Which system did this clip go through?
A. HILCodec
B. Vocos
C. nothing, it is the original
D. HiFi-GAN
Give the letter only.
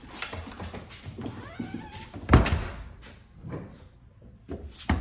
C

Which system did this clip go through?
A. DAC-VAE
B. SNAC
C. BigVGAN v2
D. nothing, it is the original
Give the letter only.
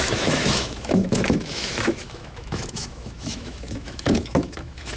A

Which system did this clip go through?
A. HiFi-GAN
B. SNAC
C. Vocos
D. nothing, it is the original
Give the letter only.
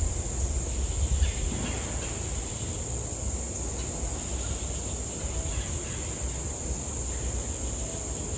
D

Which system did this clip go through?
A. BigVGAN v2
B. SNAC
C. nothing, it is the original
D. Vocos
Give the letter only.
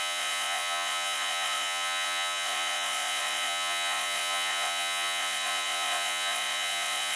D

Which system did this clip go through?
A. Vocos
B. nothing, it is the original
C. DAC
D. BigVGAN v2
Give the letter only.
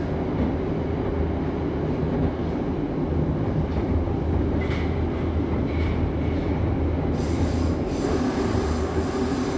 B